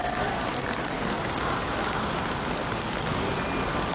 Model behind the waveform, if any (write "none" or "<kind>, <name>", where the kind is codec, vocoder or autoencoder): none